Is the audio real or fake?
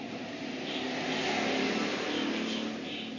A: real